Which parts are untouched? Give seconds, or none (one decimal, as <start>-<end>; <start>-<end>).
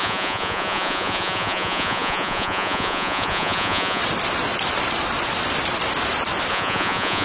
4.0-6.5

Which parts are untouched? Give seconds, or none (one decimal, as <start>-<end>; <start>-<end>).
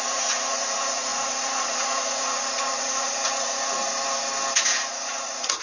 3.8-4.6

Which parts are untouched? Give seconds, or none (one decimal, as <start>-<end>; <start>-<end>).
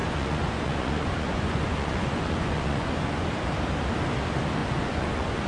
3.3-4.6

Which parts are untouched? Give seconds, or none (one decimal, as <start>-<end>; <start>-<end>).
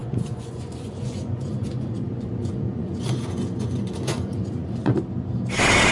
4.9-5.9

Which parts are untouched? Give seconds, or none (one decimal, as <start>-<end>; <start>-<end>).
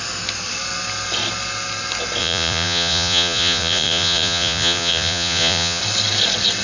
0.0-2.2; 5.8-6.6